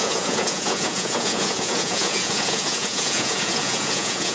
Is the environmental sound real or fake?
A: fake